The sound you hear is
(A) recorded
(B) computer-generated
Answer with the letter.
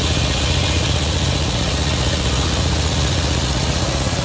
B